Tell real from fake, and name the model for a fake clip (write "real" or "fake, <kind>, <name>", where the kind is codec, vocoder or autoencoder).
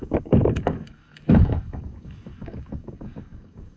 fake, codec, DAC